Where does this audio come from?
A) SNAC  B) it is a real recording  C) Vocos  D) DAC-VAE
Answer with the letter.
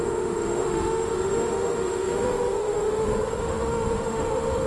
D